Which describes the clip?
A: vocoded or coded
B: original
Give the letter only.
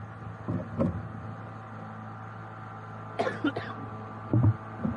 B